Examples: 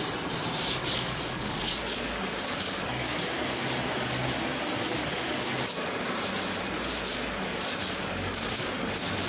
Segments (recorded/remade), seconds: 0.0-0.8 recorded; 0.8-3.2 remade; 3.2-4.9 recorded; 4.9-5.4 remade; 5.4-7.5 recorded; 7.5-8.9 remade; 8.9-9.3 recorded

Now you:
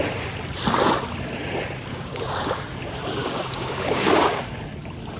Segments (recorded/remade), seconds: 0.0-1.9 recorded; 1.9-2.5 remade; 2.5-3.2 recorded; 3.2-4.4 remade; 4.4-5.2 recorded

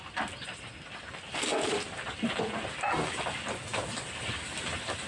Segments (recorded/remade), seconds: 0.0-5.1 recorded

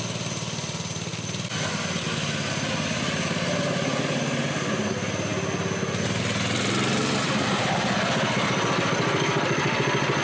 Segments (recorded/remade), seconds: 0.0-10.2 recorded

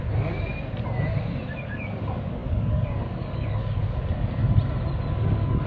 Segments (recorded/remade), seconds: 0.0-0.5 remade; 0.5-1.6 recorded; 1.6-4.4 remade; 4.4-5.1 recorded; 5.1-5.7 remade

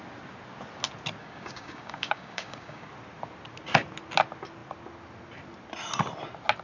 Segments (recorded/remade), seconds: 0.0-1.2 recorded; 1.2-2.9 remade; 2.9-6.6 recorded

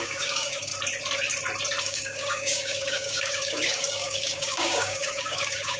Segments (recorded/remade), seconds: 0.0-0.7 remade; 0.7-1.8 recorded; 1.8-5.8 remade